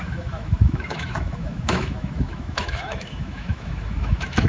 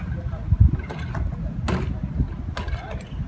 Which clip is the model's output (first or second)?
first